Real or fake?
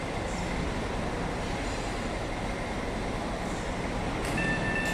real